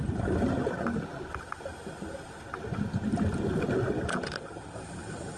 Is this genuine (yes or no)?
yes